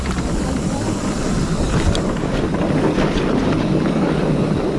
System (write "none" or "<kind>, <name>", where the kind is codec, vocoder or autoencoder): none